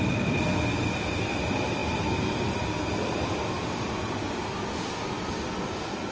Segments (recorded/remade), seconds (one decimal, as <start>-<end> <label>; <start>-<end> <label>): 0.0-6.1 recorded